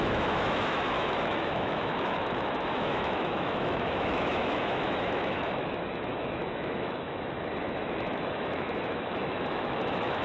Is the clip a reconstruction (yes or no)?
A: yes